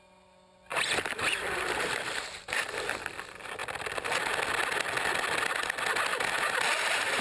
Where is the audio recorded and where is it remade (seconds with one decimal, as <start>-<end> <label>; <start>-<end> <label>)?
0.0-0.7 recorded; 0.7-2.7 remade; 2.7-6.1 recorded; 6.1-7.2 remade

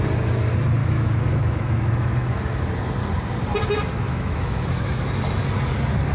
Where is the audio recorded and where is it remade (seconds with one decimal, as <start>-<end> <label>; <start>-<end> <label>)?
0.0-0.8 recorded; 0.8-2.7 remade; 2.7-4.1 recorded; 4.1-5.0 remade; 5.0-6.1 recorded

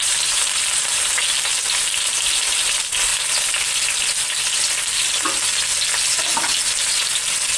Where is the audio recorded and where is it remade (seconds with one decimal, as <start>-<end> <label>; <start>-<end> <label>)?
0.0-3.1 remade; 3.1-7.6 recorded

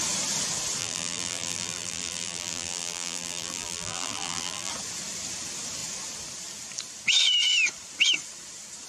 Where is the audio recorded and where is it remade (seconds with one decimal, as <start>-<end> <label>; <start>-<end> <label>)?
0.0-0.8 recorded; 0.8-4.7 remade; 4.7-8.9 recorded

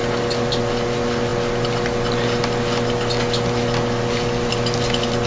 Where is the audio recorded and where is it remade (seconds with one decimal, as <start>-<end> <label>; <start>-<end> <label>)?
0.0-5.3 recorded

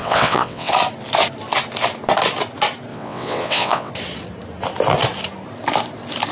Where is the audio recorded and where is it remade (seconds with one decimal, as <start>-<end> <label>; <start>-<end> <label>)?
0.0-0.7 remade; 0.7-2.9 recorded; 2.9-3.9 remade; 3.9-6.3 recorded

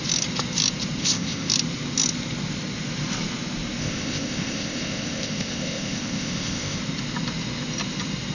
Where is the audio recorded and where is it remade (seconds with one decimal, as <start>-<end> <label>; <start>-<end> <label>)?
0.0-1.0 recorded; 1.0-1.5 remade; 1.5-3.8 recorded; 3.8-6.8 remade; 6.8-8.3 recorded

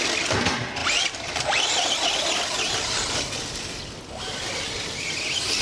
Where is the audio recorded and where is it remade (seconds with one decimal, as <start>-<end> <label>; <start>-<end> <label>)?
0.0-5.6 recorded